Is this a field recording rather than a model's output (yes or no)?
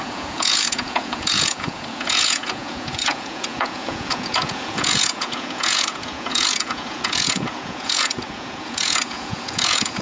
no